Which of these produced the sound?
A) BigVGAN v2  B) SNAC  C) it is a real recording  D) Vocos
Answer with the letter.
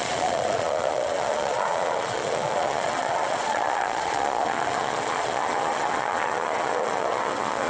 D